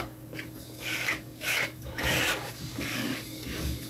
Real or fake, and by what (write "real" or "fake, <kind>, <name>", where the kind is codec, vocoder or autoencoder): fake, codec, DAC